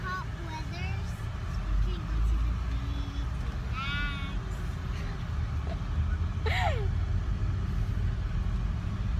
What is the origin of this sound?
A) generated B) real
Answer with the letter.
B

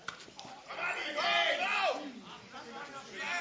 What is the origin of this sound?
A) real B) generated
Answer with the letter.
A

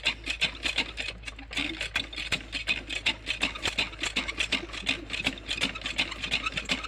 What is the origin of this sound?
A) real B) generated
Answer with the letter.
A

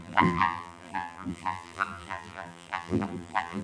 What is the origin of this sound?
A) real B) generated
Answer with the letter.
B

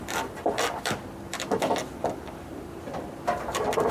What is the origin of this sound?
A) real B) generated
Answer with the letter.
B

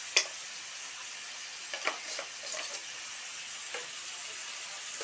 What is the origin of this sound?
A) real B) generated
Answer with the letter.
A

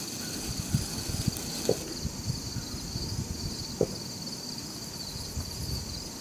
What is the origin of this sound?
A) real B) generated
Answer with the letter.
A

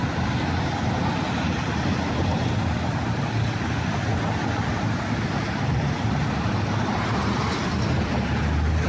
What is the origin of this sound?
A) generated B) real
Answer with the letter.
B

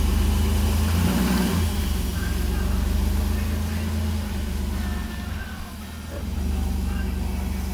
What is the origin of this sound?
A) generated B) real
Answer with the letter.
B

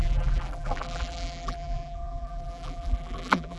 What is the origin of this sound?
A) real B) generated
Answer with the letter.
B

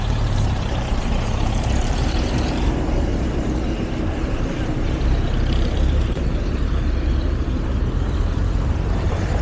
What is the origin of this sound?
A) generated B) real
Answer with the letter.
A